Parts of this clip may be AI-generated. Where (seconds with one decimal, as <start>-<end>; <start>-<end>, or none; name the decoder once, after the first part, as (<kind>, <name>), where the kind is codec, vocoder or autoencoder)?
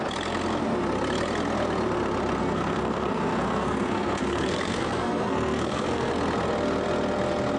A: 2.4-6.1 (codec, SNAC)